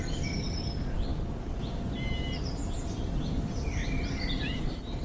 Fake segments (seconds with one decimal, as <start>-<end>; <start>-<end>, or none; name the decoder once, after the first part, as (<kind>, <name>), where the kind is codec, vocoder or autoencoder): 0.0-1.1 (vocoder, BigVGAN v2); 2.7-3.8; 4.3-5.0